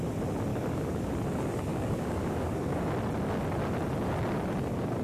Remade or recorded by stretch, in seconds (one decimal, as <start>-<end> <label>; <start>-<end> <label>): 0.0-0.5 recorded; 0.5-1.1 remade; 1.1-1.7 recorded; 1.7-2.8 remade; 2.8-5.0 recorded